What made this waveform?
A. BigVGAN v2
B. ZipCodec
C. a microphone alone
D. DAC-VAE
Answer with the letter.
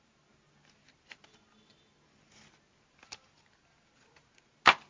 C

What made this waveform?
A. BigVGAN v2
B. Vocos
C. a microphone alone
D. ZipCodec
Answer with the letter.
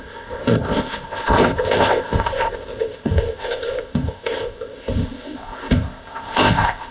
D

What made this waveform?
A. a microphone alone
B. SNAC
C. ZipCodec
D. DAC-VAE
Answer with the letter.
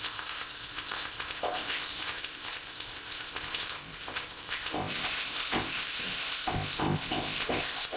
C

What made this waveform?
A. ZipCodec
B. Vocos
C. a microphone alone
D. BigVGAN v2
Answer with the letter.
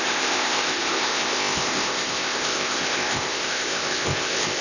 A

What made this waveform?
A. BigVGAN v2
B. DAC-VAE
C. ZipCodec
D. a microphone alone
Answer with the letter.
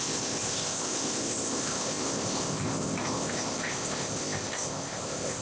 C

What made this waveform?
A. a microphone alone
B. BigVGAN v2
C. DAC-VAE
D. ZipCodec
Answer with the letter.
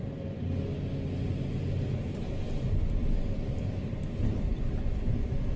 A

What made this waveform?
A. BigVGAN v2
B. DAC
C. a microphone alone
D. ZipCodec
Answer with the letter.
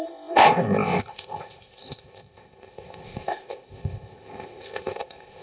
D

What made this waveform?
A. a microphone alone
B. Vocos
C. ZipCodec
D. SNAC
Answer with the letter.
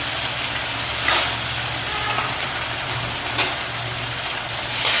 A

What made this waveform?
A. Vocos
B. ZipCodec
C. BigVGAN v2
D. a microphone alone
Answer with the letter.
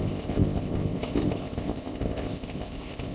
B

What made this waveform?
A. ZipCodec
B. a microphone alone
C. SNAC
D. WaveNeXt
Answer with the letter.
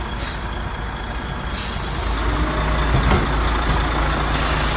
B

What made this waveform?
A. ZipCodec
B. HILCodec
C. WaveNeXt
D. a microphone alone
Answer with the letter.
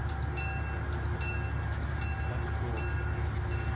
D